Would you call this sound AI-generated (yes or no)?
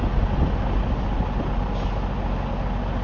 no